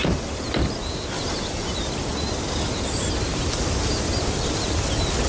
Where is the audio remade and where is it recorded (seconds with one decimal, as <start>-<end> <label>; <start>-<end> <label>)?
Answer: 0.0-5.3 recorded